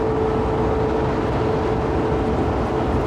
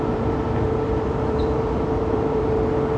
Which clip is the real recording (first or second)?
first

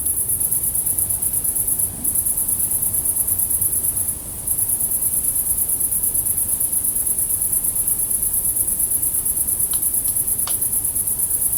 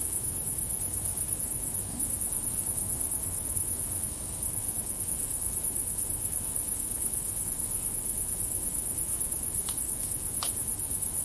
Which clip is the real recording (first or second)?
first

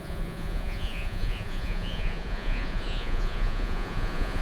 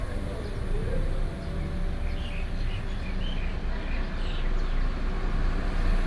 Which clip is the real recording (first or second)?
second